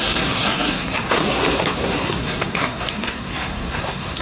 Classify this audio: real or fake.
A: fake